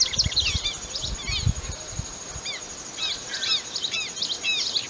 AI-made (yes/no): no